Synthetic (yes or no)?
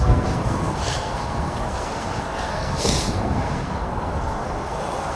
yes